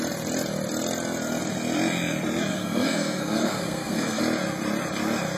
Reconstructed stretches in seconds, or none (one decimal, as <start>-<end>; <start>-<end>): 2.5-4.2